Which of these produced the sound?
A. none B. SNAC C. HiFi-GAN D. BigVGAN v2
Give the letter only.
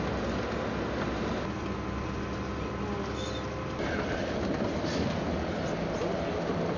A